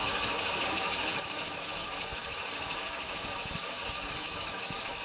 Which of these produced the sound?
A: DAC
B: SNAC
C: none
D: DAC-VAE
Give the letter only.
A